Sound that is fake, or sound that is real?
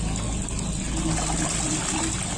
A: real